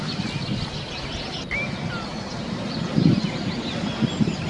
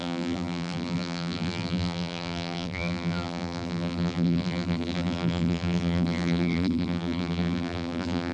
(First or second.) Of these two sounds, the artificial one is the second